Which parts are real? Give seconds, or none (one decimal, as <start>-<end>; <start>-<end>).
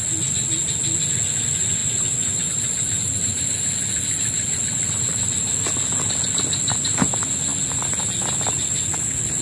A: 0.0-9.4